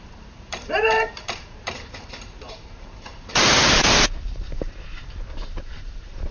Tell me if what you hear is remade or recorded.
remade